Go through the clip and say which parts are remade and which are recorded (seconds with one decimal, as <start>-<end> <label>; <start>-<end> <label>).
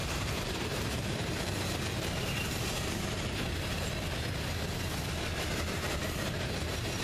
0.0-2.7 remade; 2.7-7.0 recorded